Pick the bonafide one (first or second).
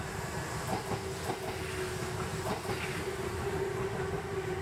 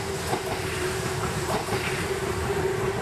first